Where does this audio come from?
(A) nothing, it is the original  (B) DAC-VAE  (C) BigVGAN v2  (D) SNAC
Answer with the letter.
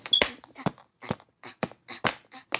A